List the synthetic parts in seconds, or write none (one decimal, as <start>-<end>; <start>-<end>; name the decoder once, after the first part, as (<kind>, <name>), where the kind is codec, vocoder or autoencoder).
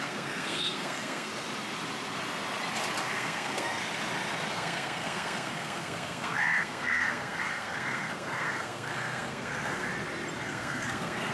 0.0-1.3 (codec, SNAC); 3.0-3.8; 4.5-9.9; 10.4-11.3